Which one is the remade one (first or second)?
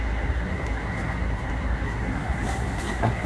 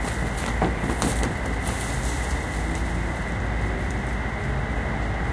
first